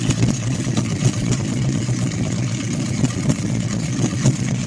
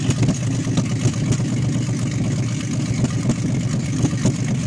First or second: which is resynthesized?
first